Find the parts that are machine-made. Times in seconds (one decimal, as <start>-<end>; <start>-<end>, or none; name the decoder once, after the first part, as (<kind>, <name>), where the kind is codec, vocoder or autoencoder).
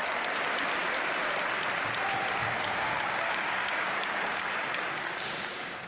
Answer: 2.4-5.9 (codec, DAC)